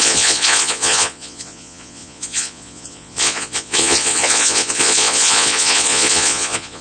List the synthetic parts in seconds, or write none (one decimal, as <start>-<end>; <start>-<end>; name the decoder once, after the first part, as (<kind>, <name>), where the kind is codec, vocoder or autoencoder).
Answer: 0.0-6.8 (vocoder, Vocos)